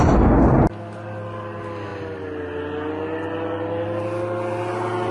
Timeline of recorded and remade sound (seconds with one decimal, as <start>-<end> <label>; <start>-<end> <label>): 0.0-5.1 recorded